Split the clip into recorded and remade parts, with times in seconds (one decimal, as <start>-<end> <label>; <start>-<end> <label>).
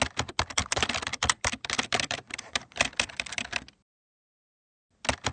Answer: 0.0-0.6 recorded; 0.6-3.8 remade; 3.8-5.3 recorded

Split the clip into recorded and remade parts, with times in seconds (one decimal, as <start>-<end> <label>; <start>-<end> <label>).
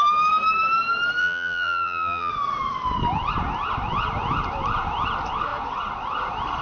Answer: 0.0-1.2 recorded; 1.2-2.3 remade; 2.3-6.6 recorded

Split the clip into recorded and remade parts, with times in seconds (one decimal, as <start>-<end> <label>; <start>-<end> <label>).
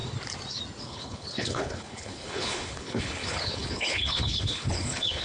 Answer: 0.0-0.8 recorded; 0.8-5.2 remade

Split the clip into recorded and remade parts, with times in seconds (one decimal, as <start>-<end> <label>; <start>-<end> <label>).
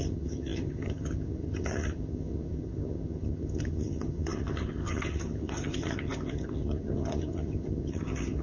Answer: 0.0-8.4 remade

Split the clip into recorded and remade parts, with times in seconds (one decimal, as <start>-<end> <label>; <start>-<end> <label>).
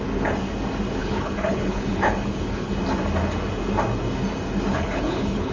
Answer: 0.0-1.0 recorded; 1.0-2.7 remade; 2.7-4.7 recorded; 4.7-5.5 remade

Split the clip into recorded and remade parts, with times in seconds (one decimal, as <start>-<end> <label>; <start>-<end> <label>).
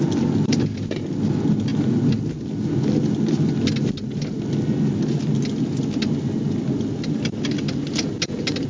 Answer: 0.0-8.7 recorded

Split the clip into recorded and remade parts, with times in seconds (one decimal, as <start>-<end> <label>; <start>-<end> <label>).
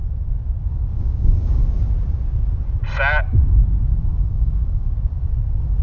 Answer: 0.0-0.9 recorded; 0.9-1.9 remade; 1.9-4.1 recorded; 4.1-4.9 remade; 4.9-5.8 recorded